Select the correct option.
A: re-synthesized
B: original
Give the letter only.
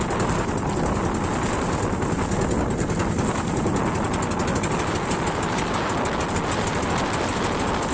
B